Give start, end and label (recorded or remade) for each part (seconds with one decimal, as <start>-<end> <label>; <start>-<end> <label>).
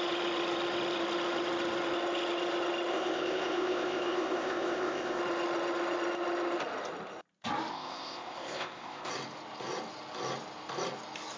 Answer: 0.0-2.9 recorded; 2.9-5.2 remade; 5.2-7.7 recorded; 7.7-9.1 remade; 9.1-11.4 recorded